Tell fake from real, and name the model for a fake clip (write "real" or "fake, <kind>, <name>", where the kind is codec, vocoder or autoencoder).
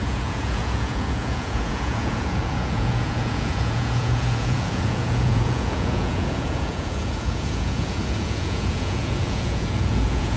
fake, vocoder, Vocos